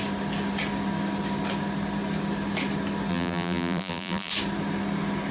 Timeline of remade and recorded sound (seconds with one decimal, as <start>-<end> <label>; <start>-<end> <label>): 0.0-3.1 recorded; 3.1-4.3 remade; 4.3-5.3 recorded